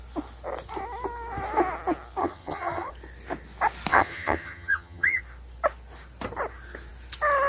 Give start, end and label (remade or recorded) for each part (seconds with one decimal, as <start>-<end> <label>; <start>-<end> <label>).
0.0-2.2 recorded; 2.2-2.9 remade; 2.9-3.9 recorded; 3.9-5.2 remade; 5.2-7.5 recorded